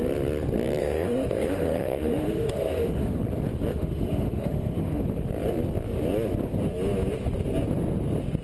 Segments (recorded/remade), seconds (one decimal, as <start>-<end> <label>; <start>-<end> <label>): 0.0-0.8 recorded; 0.8-3.2 remade; 3.2-3.7 recorded; 3.7-5.0 remade; 5.0-8.4 recorded